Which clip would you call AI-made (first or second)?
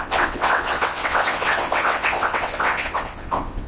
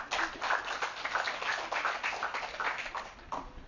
first